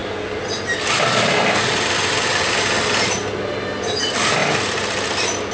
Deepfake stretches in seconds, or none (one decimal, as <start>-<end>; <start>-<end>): none